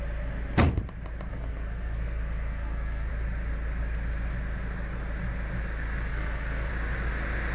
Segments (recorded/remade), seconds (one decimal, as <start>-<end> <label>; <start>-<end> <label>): 0.0-1.3 recorded; 1.3-3.1 remade; 3.1-6.1 recorded; 6.1-6.7 remade; 6.7-7.5 recorded